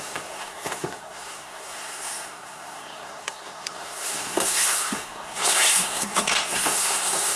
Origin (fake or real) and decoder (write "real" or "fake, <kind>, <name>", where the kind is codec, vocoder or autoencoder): fake, codec, SNAC